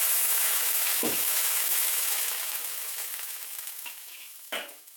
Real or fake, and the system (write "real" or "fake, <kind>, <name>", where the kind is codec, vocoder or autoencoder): fake, autoencoder, DAC-VAE